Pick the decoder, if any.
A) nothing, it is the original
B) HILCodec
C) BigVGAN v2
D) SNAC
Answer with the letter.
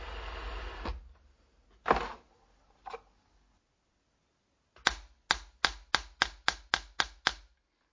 A